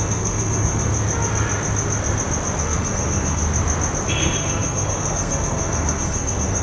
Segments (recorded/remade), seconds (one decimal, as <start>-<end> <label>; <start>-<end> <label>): 0.0-0.9 remade; 0.9-2.6 recorded; 2.6-3.4 remade; 3.4-4.1 recorded; 4.1-6.6 remade